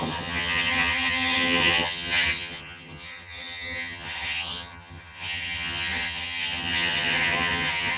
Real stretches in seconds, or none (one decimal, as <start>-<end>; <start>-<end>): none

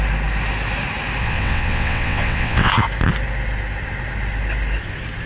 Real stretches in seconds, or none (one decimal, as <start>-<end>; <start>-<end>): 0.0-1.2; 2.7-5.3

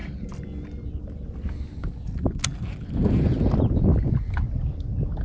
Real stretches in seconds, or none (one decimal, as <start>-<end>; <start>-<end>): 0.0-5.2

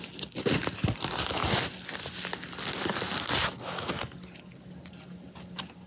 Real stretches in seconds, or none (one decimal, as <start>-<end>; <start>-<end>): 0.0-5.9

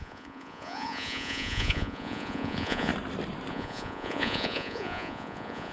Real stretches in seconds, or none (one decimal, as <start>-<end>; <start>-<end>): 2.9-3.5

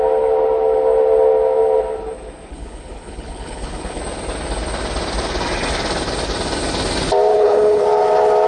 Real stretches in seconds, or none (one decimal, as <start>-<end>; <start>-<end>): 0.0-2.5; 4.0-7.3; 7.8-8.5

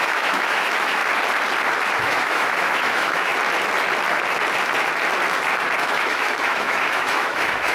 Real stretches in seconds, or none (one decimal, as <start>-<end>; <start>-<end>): 1.0-2.0; 3.3-5.8

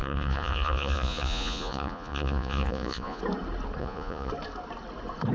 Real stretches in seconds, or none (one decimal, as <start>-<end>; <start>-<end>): 3.2-3.8; 4.3-5.3